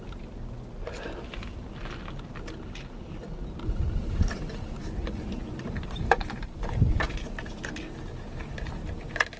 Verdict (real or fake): real